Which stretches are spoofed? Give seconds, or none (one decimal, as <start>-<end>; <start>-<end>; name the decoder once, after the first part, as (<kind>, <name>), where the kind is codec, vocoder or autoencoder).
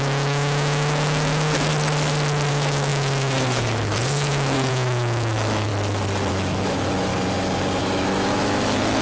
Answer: 0.0-1.7 (autoencoder, DAC-VAE); 2.5-5.7; 6.3-7.1; 7.8-9.0